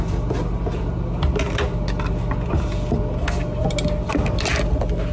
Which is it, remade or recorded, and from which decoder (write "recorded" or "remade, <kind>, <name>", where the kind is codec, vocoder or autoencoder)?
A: recorded